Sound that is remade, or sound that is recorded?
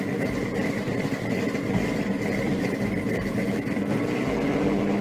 recorded